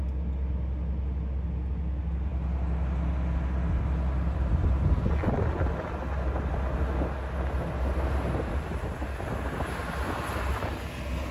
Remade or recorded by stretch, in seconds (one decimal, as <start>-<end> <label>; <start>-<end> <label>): 0.0-11.3 recorded